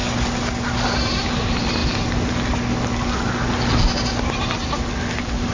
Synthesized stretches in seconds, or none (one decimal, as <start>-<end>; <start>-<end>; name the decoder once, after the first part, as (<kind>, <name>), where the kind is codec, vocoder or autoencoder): none